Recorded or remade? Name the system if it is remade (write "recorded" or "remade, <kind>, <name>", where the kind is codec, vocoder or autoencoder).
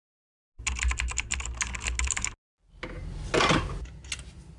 recorded